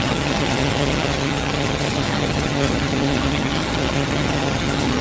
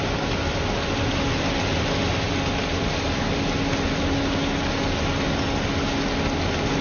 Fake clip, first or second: first